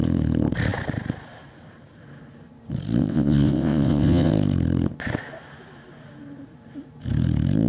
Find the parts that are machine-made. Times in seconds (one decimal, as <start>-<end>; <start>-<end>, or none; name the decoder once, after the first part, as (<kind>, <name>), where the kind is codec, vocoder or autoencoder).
3.1-4.3 (vocoder, WaveNeXt)